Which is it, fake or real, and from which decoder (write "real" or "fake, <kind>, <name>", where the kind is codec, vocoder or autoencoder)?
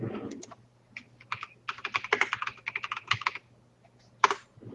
real